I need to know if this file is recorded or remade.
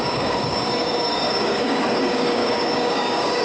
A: remade